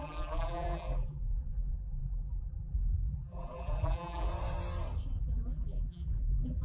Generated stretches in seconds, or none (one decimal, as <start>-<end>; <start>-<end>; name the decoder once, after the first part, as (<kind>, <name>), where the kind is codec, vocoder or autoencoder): 0.0-4.3 (vocoder, BigVGAN v2); 5.3-6.6